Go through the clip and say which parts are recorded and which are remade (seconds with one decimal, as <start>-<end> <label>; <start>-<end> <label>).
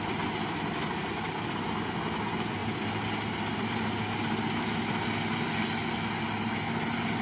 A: 0.0-7.2 recorded